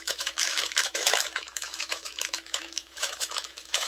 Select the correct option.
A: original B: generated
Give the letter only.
B